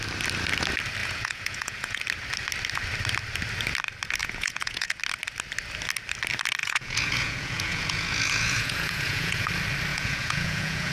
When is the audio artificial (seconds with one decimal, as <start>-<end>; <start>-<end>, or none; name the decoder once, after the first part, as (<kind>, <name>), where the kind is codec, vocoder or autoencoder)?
1.0-2.0 (vocoder, Vocos); 4.2-5.0; 6.6-9.5; 9.9-10.9